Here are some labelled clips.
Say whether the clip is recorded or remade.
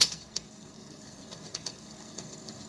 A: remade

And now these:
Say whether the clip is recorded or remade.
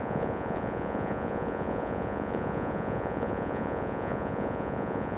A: remade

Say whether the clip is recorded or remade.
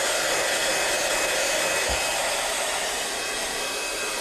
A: recorded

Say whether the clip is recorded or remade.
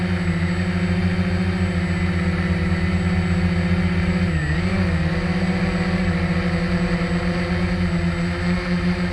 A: recorded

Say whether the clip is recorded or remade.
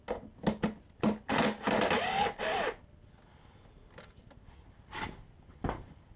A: recorded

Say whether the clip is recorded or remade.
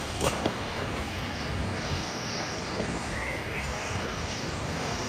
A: remade